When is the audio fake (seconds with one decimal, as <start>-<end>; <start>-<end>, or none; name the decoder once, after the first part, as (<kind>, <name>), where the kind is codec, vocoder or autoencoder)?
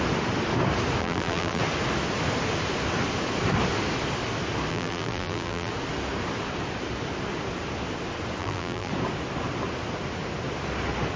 1.0-1.6 (vocoder, BigVGAN v2); 4.7-5.7; 8.4-8.9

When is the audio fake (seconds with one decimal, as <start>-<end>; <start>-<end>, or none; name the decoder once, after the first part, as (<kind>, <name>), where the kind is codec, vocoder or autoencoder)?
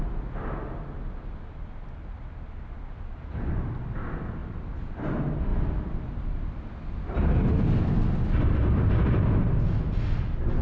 4.4-5.0 (vocoder, BigVGAN v2); 5.5-7.2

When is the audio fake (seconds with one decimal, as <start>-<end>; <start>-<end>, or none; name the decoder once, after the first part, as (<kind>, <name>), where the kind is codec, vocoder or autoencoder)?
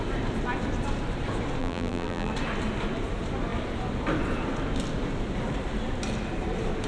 1.6-2.3 (vocoder, BigVGAN v2)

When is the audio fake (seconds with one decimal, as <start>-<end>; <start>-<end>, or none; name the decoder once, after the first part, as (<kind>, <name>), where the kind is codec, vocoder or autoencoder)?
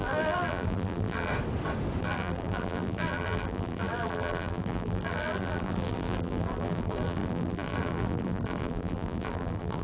0.0-1.3 (vocoder, BigVGAN v2); 2.0-9.8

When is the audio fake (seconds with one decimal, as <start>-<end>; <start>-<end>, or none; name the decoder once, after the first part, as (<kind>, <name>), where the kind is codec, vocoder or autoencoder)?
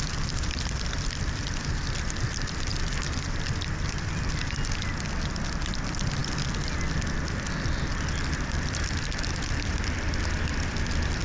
0.0-6.2 (vocoder, BigVGAN v2); 7.9-11.2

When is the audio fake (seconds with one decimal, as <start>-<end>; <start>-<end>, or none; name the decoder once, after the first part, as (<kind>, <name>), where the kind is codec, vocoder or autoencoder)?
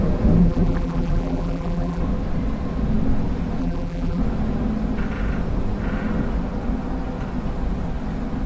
0.4-2.0 (vocoder, BigVGAN v2); 3.6-4.2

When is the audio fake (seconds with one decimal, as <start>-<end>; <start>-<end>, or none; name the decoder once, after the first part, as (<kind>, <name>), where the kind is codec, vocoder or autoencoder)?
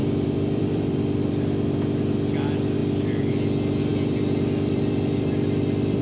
0.0-1.3 (vocoder, BigVGAN v2); 2.8-3.3; 3.9-6.0